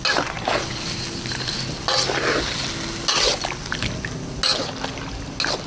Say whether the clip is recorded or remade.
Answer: recorded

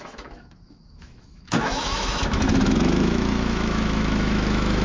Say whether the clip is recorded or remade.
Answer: remade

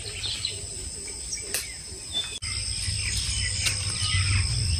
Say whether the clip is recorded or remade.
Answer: recorded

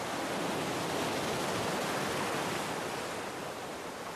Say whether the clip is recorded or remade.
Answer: recorded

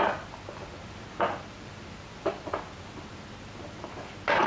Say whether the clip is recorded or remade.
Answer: recorded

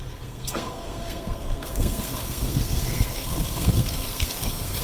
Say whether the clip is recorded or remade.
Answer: remade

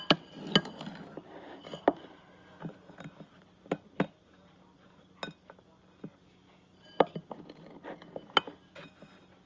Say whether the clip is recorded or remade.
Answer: recorded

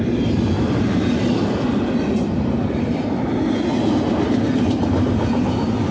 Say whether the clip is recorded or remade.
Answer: recorded